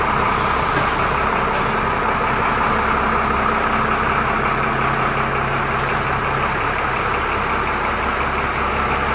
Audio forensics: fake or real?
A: real